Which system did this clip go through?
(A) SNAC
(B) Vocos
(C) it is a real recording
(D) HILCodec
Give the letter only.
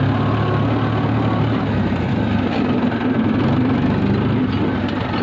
C